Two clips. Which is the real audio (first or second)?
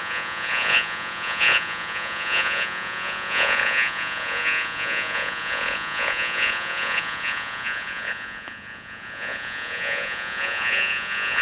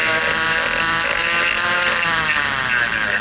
second